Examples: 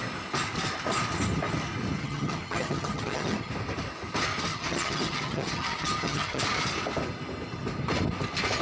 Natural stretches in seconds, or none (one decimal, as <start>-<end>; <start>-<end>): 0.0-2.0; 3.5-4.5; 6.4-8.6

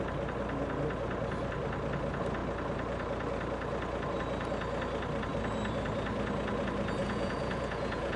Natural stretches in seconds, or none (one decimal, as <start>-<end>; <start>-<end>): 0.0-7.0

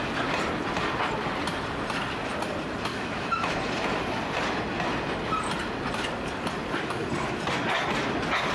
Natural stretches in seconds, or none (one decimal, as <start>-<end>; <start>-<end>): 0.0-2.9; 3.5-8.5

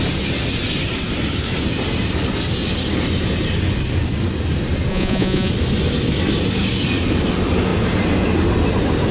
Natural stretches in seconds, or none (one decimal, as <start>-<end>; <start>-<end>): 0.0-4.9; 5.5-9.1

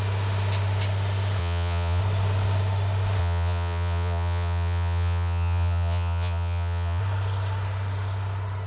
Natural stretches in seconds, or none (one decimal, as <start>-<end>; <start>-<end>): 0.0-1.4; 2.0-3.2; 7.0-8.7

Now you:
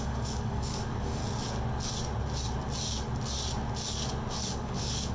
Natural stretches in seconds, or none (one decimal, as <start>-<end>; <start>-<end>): 1.2-4.3

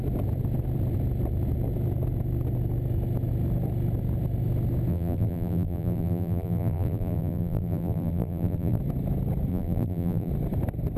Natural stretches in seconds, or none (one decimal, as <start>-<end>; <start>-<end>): 0.0-4.9; 8.8-9.5; 10.3-11.0

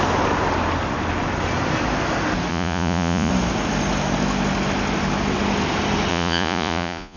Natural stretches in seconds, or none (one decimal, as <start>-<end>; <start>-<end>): 0.0-2.5; 3.3-6.1